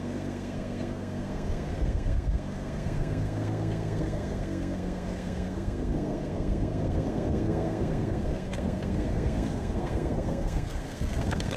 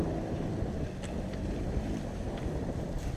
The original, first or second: second